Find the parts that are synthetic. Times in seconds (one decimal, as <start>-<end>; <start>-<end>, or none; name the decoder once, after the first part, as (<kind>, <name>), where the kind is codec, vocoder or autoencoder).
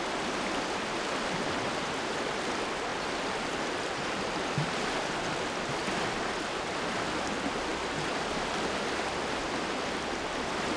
none